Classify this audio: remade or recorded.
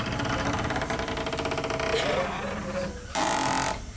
recorded